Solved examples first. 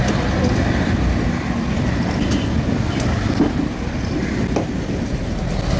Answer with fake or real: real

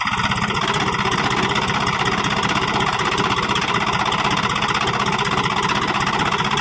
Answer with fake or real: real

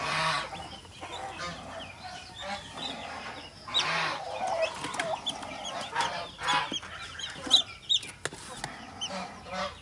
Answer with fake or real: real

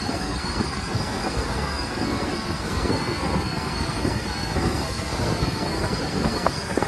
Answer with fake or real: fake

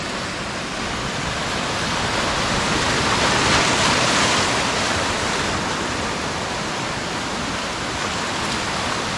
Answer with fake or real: real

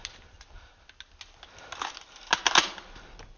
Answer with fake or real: real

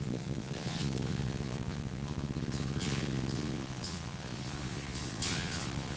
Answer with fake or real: fake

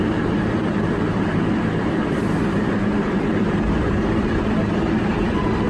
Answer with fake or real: fake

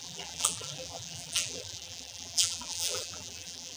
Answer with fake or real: fake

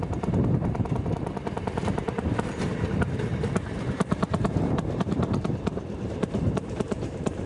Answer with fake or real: fake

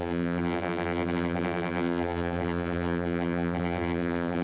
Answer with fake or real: fake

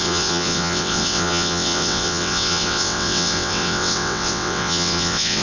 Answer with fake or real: fake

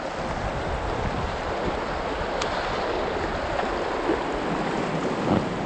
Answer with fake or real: real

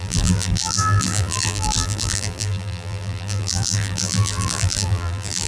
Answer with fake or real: fake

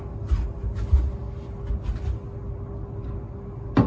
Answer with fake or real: real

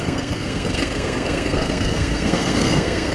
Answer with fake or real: fake